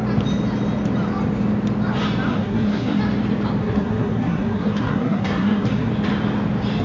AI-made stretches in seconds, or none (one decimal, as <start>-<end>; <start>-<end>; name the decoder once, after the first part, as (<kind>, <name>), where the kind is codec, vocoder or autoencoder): 2.3-3.0 (codec, SNAC); 3.6-5.9